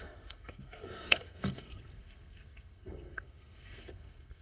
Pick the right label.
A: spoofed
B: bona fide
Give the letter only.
A